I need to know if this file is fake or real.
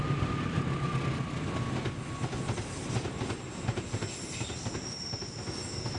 real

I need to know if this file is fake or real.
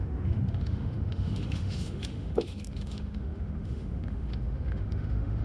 fake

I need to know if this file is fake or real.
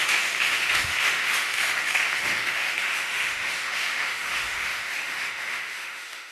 fake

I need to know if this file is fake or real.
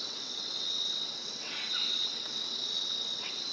fake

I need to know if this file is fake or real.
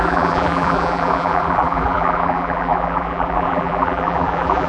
fake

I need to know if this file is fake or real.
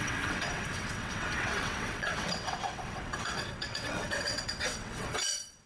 fake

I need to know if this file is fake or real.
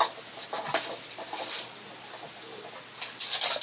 real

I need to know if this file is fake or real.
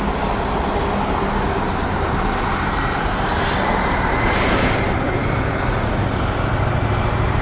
real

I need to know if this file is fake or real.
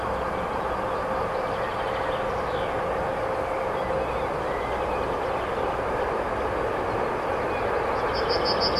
real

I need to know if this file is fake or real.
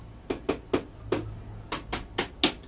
real